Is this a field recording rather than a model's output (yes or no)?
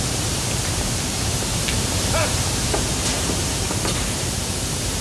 no